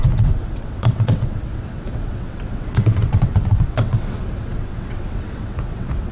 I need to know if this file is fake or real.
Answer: fake